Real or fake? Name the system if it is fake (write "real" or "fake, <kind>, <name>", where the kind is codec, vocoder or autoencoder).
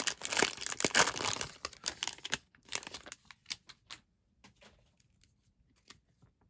real